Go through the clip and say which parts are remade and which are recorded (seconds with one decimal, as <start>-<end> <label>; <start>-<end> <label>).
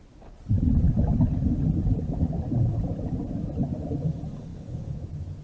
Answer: 0.0-4.5 recorded; 4.5-5.4 remade